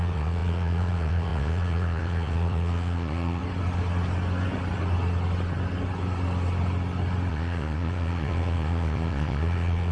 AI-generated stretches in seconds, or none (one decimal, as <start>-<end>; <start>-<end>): 0.0-3.4; 7.3-9.9